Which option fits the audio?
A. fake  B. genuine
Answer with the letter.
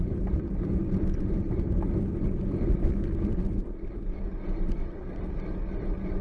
B